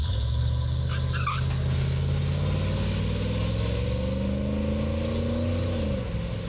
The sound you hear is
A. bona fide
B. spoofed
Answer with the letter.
A